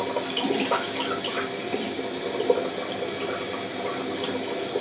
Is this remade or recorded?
recorded